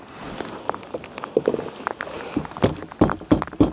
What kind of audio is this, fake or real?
real